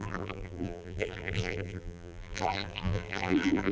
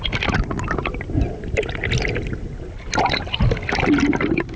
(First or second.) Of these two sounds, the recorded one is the second